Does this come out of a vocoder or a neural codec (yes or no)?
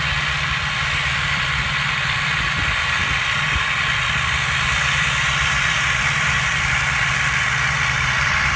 yes